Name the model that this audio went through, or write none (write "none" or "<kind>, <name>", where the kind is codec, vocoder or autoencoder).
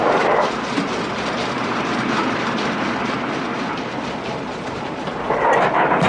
vocoder, BigVGAN v2